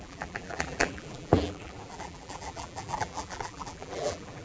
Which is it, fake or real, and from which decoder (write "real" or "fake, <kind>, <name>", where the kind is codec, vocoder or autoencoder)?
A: fake, vocoder, BigVGAN v2